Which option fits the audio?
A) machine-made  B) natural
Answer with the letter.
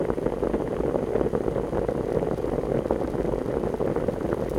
B